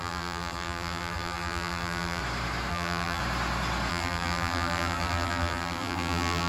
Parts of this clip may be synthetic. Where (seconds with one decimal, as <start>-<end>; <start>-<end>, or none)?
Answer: 0.0-2.2; 2.7-3.2; 3.9-6.5